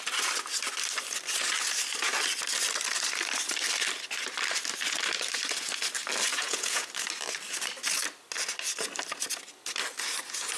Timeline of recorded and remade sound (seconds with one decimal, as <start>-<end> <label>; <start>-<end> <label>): 0.0-6.3 recorded; 6.3-6.9 remade; 6.9-10.6 recorded